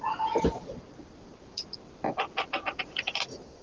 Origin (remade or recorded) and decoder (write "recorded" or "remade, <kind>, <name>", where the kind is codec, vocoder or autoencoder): recorded